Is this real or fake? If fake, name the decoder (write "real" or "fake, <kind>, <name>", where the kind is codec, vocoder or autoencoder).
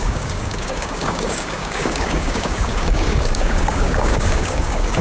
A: fake, codec, DAC